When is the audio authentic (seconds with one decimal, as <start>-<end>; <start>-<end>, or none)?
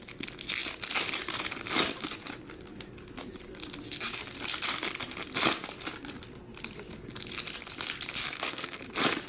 0.0-8.2; 8.8-9.3